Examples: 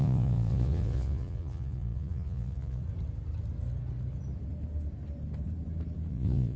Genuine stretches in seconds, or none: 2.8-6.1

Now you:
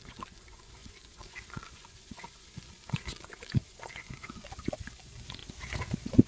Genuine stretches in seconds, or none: none

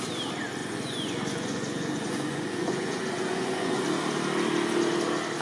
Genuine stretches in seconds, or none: 0.0-0.6; 3.8-5.4

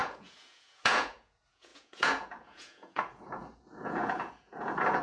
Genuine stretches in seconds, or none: none

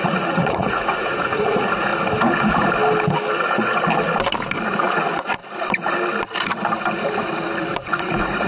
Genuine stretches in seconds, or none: 1.9-4.8; 5.4-7.7

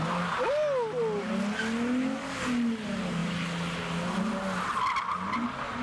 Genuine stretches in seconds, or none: 0.0-5.8

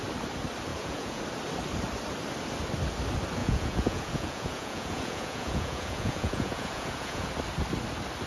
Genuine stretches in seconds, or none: 0.0-0.7; 1.2-3.4; 7.3-8.3

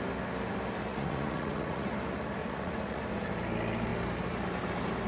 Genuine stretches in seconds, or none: 0.0-0.9; 1.9-2.4; 3.0-5.1